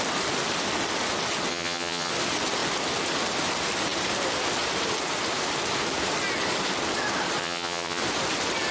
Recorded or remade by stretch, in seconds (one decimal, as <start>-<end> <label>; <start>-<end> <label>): 0.0-1.5 recorded; 1.5-2.1 remade; 2.1-7.4 recorded; 7.4-8.0 remade; 8.0-8.7 recorded